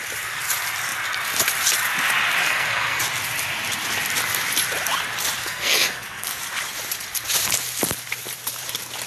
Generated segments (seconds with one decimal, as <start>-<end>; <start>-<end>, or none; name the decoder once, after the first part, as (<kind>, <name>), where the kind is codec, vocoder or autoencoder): 2.4-3.0 (codec, SNAC); 5.4-6.4